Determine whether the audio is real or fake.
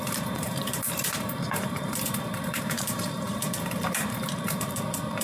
fake